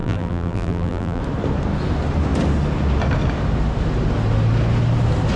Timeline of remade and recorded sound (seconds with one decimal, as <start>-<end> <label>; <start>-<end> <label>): 0.0-1.2 remade; 1.2-5.4 recorded